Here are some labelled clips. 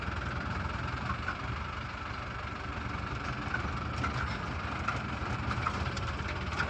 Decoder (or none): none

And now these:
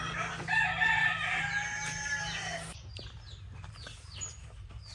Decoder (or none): none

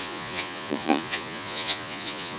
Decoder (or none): vocoder, Vocos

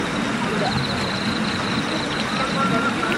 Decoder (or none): none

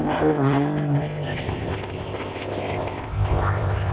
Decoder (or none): codec, ZipCodec